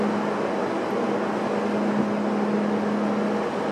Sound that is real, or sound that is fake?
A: real